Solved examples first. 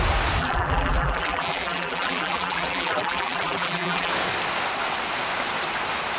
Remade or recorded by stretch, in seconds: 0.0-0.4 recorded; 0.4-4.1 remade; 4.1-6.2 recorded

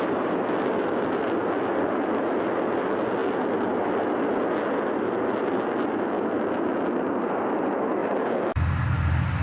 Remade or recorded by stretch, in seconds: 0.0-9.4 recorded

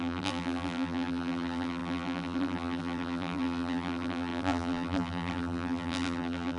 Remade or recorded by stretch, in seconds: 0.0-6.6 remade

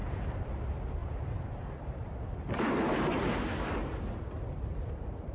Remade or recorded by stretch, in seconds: 0.0-0.6 remade; 0.6-1.0 recorded; 1.0-4.2 remade; 4.2-5.3 recorded

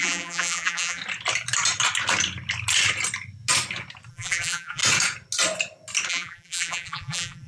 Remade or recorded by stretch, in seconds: 0.0-1.0 remade; 1.0-4.1 recorded; 4.1-4.8 remade; 4.8-6.1 recorded; 6.1-7.5 remade

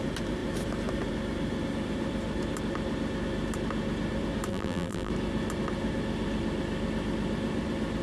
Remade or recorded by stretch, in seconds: 0.0-4.5 recorded; 4.5-5.1 remade; 5.1-8.0 recorded